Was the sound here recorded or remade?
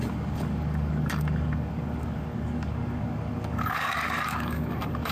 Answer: remade